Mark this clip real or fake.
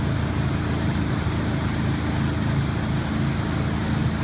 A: real